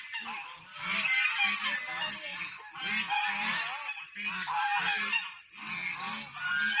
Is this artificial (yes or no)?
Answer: no